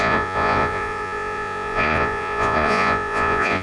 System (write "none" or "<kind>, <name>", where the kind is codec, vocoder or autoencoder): vocoder, Vocos